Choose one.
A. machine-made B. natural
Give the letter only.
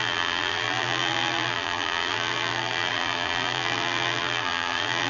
A